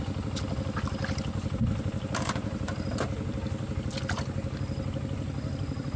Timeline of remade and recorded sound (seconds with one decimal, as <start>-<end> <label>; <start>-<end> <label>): 0.0-1.3 recorded; 1.3-2.8 remade; 2.8-6.0 recorded